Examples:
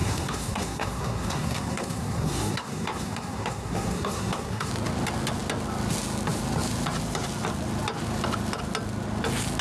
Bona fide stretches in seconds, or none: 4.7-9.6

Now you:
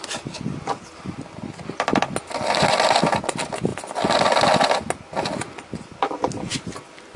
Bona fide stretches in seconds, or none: 0.0-7.2

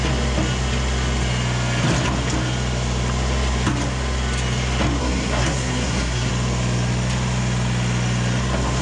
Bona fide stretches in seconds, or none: 0.0-5.0; 6.3-8.8